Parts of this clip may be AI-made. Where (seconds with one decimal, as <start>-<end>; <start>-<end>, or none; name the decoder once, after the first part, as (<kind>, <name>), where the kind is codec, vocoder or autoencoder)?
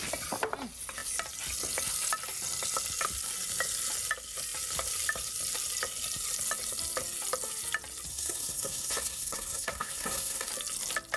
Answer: 8.1-10.5 (codec, SNAC)